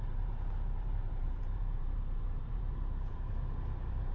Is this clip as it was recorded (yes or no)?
no